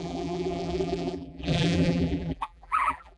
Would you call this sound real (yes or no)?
no